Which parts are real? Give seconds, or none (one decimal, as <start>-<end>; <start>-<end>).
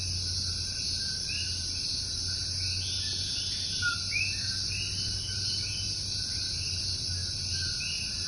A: 0.0-8.3